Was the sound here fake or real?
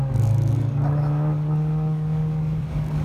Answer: fake